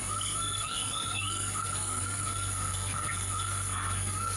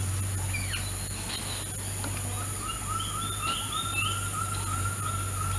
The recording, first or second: second